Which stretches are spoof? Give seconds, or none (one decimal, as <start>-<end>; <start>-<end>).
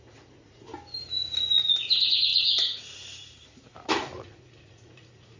0.0-0.7; 1.6-5.4